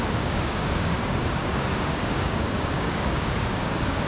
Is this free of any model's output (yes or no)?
no